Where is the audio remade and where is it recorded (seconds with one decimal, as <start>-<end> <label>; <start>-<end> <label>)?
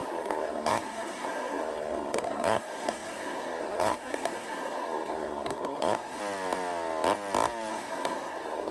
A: 0.0-6.2 remade; 6.2-7.7 recorded; 7.7-8.7 remade